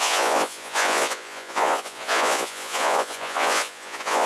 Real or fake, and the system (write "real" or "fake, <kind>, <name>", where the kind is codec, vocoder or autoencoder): fake, vocoder, Vocos